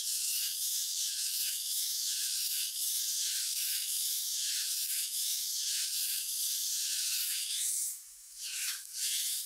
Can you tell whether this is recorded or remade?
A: remade